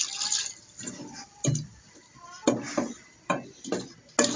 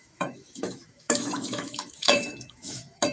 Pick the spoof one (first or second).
second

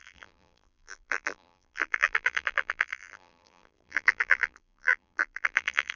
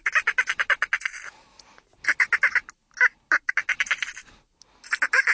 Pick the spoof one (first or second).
first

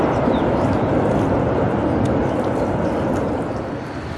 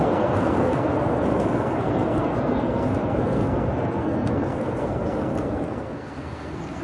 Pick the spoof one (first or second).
second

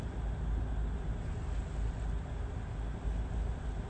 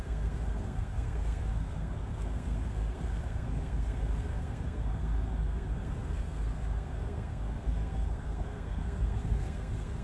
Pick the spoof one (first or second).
second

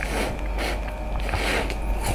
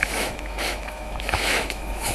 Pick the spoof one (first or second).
second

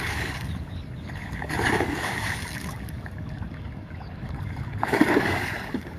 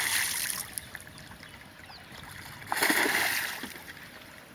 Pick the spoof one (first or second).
first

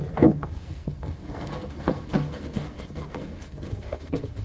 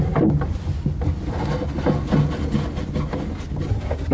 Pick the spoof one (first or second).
first